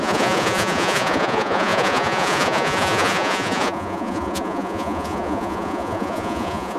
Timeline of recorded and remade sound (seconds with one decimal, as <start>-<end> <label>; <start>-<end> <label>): 0.0-6.8 remade